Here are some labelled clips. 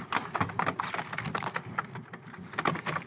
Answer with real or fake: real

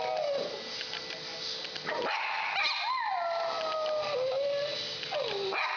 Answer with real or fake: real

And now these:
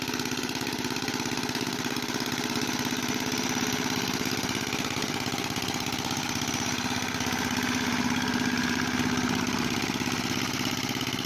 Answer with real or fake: real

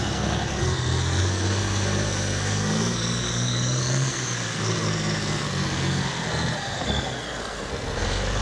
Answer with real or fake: fake